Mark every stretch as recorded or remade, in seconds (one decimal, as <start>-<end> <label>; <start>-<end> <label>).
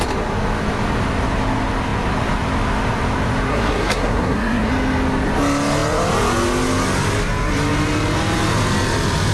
0.0-3.5 recorded; 3.5-4.7 remade; 4.7-9.3 recorded